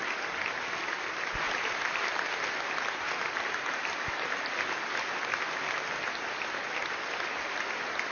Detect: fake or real real